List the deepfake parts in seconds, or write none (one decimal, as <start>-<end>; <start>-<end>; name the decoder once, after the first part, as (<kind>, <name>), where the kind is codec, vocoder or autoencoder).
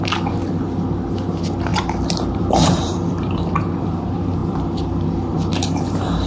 0.0-1.7 (vocoder, BigVGAN v2); 2.3-6.3